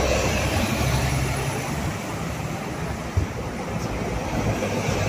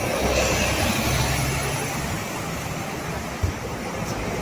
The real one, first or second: second